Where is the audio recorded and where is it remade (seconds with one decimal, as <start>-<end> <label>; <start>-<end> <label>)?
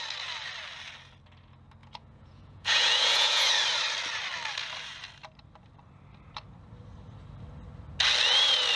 0.0-1.8 recorded; 1.8-3.5 remade; 3.5-8.8 recorded